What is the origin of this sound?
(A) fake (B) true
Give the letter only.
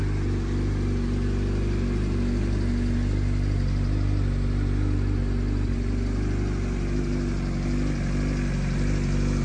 B